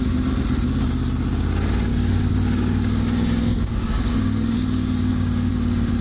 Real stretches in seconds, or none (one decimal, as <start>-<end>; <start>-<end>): 0.0-1.9; 5.5-6.0